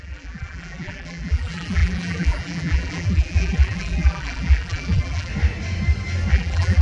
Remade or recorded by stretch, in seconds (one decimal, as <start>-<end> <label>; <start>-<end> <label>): 0.0-5.3 remade; 5.3-6.3 recorded; 6.3-6.8 remade